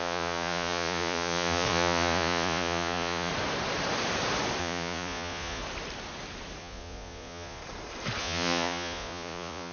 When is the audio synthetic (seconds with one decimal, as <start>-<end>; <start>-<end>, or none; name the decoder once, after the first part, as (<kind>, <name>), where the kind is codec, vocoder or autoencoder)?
0.0-3.3 (vocoder, Vocos); 4.6-5.6; 6.6-7.6; 8.2-9.7